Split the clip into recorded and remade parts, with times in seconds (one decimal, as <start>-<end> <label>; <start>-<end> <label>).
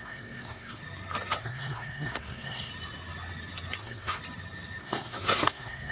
0.0-0.8 remade; 0.8-1.4 recorded; 1.4-2.7 remade; 2.7-3.8 recorded; 3.8-4.2 remade; 4.2-4.8 recorded; 4.8-5.9 remade